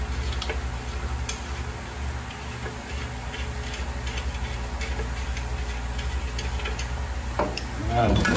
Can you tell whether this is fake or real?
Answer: real